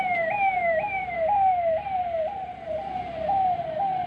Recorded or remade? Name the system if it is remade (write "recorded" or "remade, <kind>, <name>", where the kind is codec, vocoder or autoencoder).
remade, vocoder, BigVGAN v2